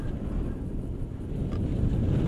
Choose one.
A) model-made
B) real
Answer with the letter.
B